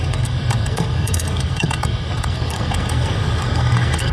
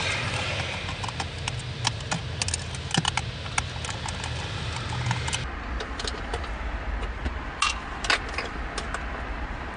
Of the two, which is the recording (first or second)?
second